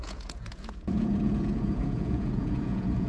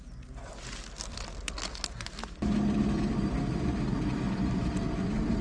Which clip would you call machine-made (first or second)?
first